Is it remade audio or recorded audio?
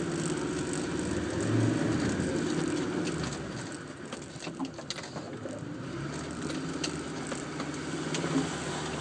recorded